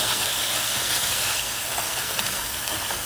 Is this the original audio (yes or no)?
no